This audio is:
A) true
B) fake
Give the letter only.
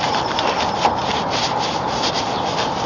A